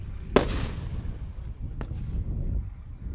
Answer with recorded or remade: recorded